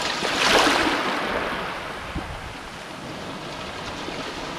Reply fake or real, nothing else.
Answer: real